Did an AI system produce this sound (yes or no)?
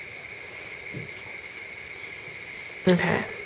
no